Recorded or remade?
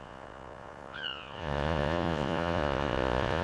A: remade